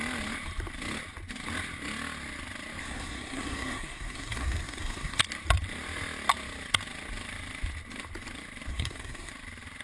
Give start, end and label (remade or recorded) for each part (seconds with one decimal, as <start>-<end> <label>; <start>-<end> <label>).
0.0-2.8 recorded; 2.8-5.2 remade; 5.2-8.7 recorded; 8.7-9.3 remade; 9.3-9.8 recorded